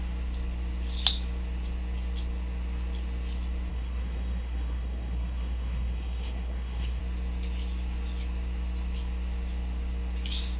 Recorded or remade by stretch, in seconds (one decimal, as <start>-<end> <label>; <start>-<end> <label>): 0.0-3.7 recorded; 3.7-7.0 remade; 7.0-10.6 recorded